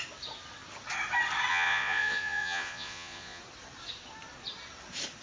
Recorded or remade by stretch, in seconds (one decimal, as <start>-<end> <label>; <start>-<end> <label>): 0.0-1.5 recorded; 1.5-3.4 remade; 3.4-5.2 recorded